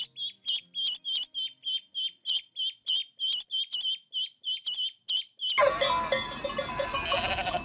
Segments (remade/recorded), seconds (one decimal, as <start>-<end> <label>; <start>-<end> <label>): 0.0-7.6 recorded